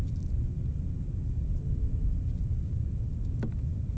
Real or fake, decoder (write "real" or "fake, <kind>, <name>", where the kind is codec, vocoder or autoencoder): real